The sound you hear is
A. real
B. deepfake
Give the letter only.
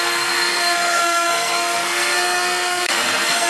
B